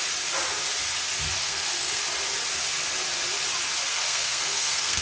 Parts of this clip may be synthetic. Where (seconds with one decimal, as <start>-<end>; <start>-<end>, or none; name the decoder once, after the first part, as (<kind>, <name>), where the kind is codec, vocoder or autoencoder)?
1.4-2.0 (codec, SNAC); 3.9-5.0